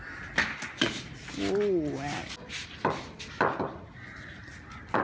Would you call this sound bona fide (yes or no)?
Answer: yes